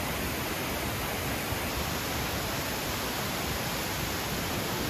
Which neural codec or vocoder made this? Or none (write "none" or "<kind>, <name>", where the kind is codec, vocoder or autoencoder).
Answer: none